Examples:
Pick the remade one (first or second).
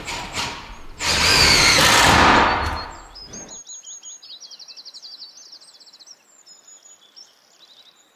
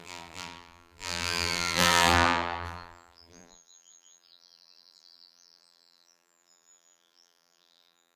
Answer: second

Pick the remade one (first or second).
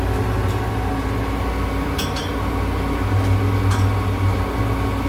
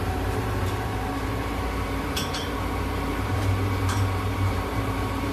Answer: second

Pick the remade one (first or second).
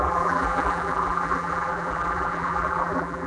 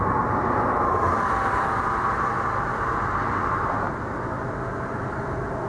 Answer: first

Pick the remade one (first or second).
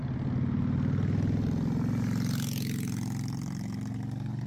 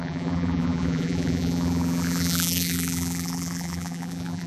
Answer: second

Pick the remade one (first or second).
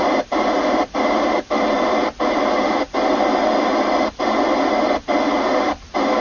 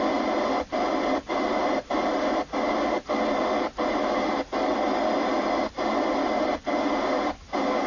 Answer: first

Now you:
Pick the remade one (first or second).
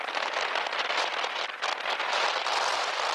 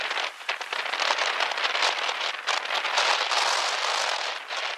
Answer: first